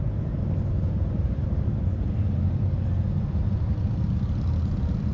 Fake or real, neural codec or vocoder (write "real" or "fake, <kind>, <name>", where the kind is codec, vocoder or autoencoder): real